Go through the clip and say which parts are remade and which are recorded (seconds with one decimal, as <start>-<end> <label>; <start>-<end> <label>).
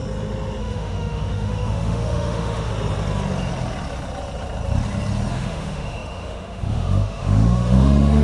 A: 0.0-0.6 recorded; 0.6-2.7 remade; 2.7-5.3 recorded; 5.3-8.2 remade